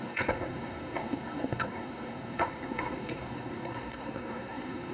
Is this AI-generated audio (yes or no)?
yes